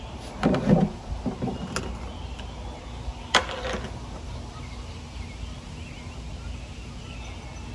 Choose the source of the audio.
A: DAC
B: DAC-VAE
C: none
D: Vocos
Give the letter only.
C